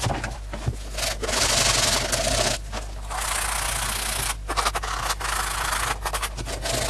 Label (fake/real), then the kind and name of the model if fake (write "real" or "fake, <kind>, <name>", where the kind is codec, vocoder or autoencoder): real